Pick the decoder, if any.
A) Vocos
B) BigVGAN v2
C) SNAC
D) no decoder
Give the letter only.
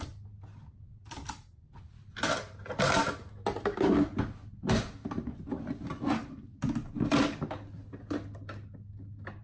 D